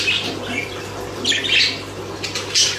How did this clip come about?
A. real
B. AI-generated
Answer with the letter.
A